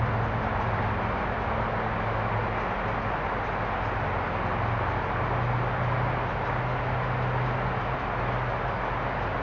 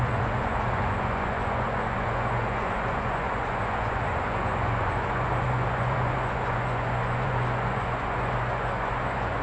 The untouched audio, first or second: first